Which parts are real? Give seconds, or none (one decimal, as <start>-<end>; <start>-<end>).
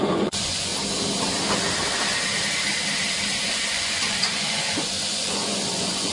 0.7-3.4